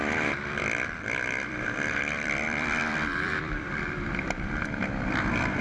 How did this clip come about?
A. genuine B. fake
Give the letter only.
B